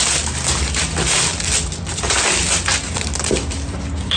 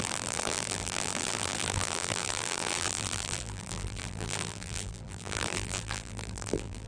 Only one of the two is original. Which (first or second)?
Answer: first